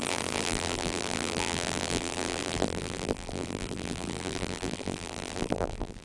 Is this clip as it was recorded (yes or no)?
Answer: no